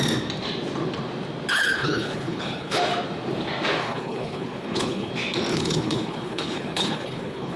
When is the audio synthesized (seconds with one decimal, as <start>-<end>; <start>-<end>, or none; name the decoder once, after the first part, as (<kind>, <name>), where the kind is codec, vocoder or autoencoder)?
1.5-2.8 (codec, HILCodec); 3.8-5.1; 5.5-7.6